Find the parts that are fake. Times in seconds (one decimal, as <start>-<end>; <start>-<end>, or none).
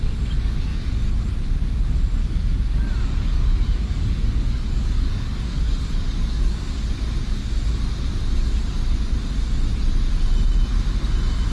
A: 0.7-1.2; 2.2-6.7